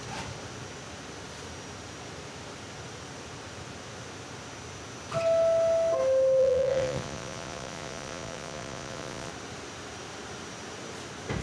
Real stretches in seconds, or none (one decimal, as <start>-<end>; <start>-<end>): 0.0-6.4; 9.3-11.4